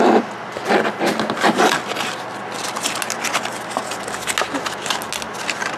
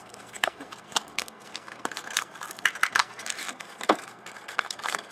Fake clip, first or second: second